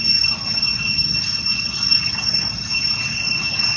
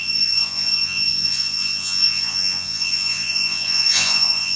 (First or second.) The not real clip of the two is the second